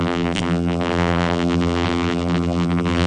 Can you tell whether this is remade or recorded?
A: remade